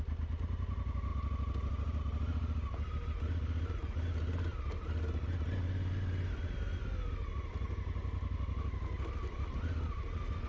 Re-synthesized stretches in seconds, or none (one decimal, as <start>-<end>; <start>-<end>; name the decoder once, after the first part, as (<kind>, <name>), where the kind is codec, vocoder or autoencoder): none